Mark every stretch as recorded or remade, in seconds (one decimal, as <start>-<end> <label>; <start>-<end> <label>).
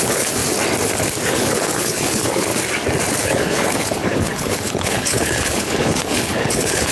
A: 0.0-0.4 remade; 0.4-1.3 recorded; 1.3-2.5 remade; 2.5-3.2 recorded; 3.2-6.9 remade